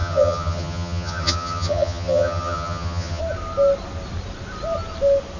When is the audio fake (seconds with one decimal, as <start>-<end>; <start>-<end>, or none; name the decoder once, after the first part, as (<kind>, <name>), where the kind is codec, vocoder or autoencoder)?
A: 0.0-3.2 (vocoder, HiFi-GAN)